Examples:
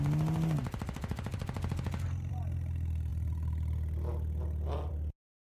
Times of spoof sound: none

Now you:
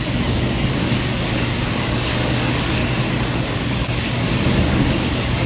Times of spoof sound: 0.0-2.8 (codec, DAC); 3.4-5.5

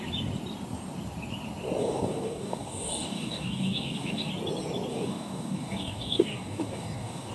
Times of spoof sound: 1.8-4.3 (codec, DAC); 4.9-7.3

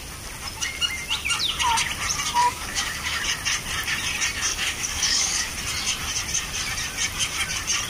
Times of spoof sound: 2.4-3.2 (codec, DAC); 4.5-5.5

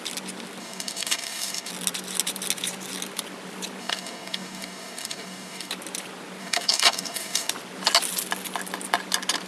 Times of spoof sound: 0.6-1.7 (codec, DAC); 3.8-5.7; 6.4-7.5

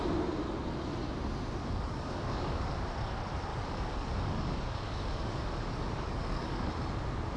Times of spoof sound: 1.6-2.7 (codec, DAC); 3.5-6.7

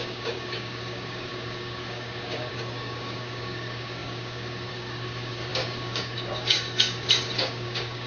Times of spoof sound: 0.0-8.1 (codec, DAC)